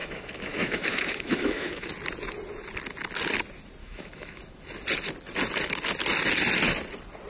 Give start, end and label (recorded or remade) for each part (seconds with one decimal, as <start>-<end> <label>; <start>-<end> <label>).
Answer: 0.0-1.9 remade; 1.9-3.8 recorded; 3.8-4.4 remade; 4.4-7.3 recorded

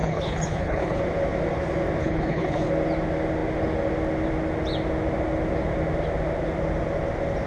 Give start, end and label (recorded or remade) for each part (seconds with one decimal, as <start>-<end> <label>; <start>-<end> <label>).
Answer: 0.0-1.0 remade; 1.0-2.0 recorded; 2.0-2.7 remade; 2.7-7.5 recorded

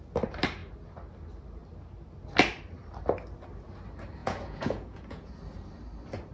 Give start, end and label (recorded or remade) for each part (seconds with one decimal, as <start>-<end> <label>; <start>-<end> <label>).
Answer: 0.0-4.2 recorded; 4.2-5.3 remade; 5.3-6.3 recorded